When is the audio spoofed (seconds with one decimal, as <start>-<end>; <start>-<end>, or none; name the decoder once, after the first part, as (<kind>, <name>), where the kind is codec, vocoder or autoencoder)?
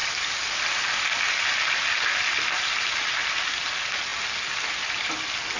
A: none